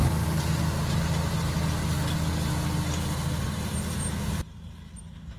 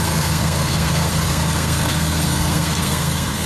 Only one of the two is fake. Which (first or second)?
second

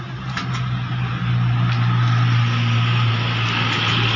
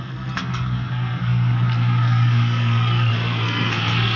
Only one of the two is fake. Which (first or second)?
second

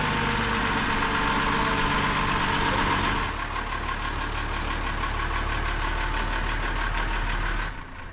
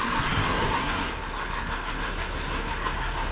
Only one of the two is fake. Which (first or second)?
second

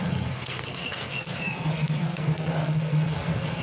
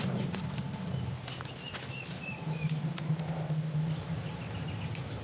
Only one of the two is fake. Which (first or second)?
first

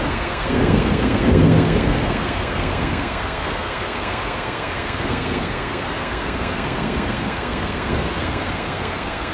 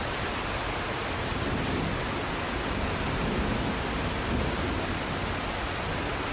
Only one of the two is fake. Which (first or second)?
first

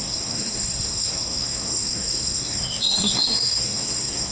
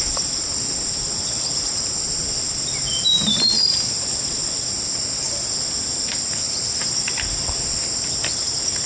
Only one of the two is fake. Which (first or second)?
first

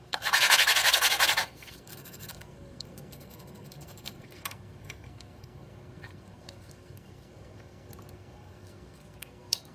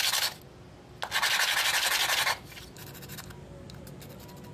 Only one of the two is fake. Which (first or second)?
first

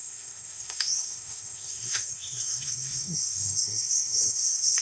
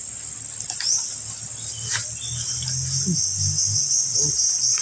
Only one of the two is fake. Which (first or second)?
first